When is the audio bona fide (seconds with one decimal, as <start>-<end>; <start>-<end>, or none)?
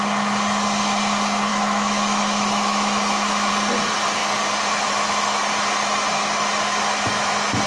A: 0.0-1.5; 3.5-7.7